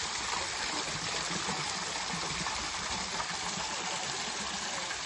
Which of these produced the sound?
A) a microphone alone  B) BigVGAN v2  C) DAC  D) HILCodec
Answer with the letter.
A